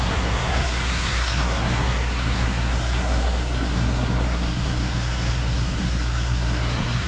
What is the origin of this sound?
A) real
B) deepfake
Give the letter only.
B